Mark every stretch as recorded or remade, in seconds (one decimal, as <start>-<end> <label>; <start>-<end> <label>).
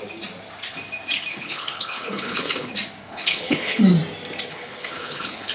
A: 0.0-1.3 recorded; 1.3-2.7 remade; 2.7-3.1 recorded; 3.1-3.8 remade; 3.8-4.5 recorded; 4.5-5.5 remade